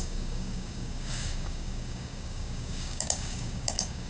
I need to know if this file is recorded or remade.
remade